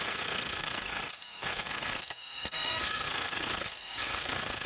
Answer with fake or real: fake